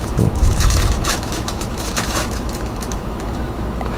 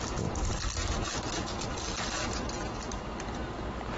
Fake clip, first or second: first